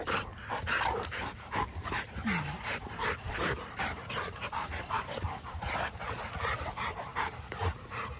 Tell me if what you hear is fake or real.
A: fake